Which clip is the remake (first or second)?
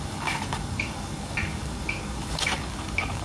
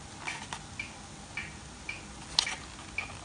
first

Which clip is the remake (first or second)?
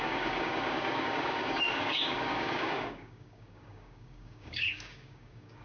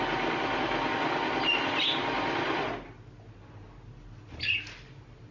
first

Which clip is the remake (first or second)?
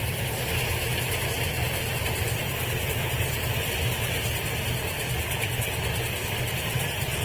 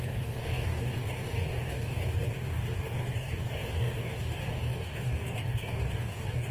second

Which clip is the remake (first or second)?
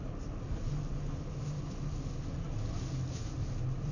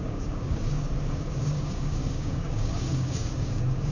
second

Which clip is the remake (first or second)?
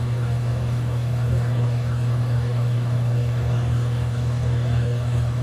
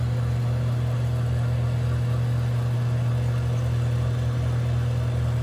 first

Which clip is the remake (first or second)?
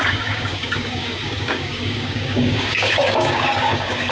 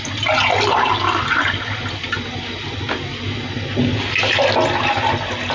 first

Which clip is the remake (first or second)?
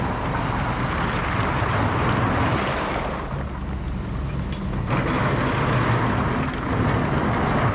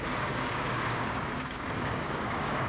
second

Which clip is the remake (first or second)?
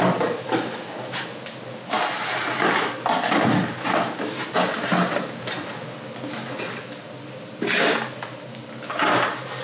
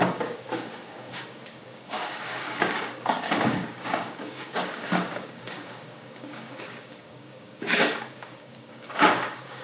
second